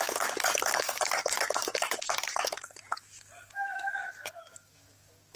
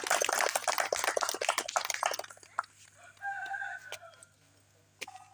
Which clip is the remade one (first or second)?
first